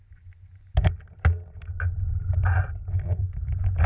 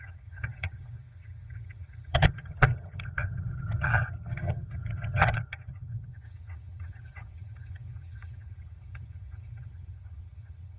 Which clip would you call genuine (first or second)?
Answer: first